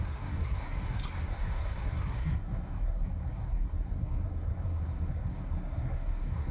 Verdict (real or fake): fake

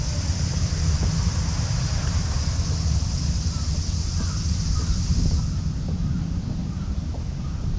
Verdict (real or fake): real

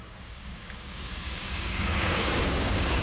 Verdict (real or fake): fake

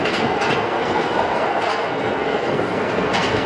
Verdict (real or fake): fake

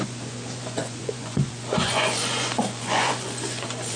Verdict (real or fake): fake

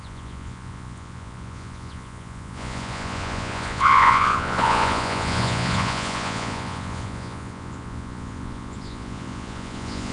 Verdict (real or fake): fake